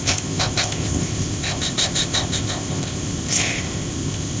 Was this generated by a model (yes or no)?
yes